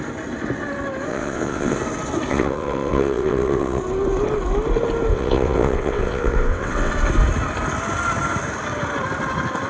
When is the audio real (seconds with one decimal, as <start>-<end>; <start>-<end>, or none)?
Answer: 0.0-1.1; 1.8-2.3; 3.8-5.1; 6.9-9.7